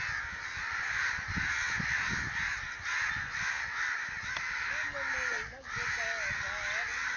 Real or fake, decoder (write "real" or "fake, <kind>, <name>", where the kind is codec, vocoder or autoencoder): real